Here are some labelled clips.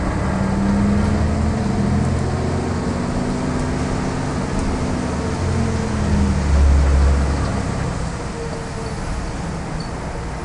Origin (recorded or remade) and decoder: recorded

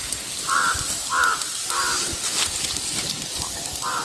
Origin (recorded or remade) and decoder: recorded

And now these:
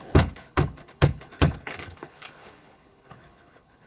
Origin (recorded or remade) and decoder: remade, codec, HILCodec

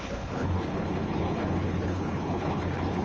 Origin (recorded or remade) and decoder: remade, codec, HILCodec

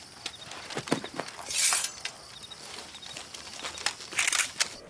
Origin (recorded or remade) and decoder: recorded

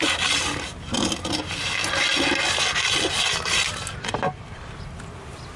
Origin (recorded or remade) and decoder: recorded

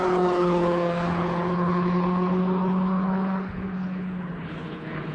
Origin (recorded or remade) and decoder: remade, codec, HILCodec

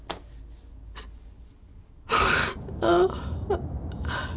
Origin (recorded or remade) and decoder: recorded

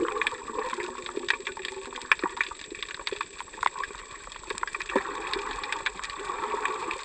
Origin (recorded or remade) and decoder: recorded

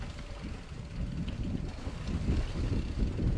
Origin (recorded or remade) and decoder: recorded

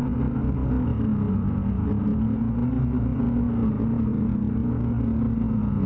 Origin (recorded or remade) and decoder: recorded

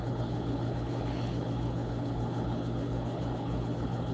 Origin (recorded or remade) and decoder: remade, codec, HILCodec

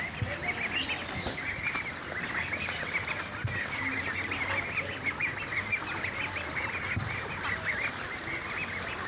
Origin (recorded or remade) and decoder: recorded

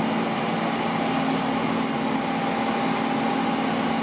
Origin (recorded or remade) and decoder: recorded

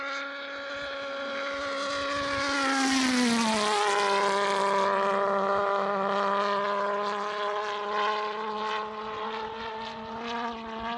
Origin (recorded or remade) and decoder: recorded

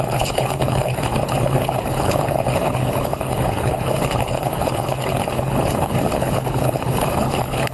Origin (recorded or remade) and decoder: remade, codec, HILCodec